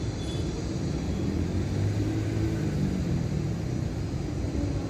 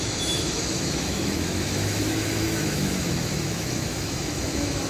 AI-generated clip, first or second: second